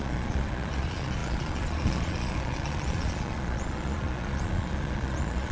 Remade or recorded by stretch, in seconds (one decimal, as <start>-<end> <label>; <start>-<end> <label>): 0.0-5.5 remade